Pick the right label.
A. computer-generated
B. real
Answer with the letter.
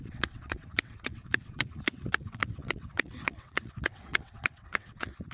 A